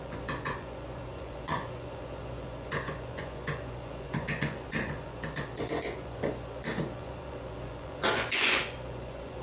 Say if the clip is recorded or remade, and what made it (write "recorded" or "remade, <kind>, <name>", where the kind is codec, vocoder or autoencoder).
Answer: remade, vocoder, Vocos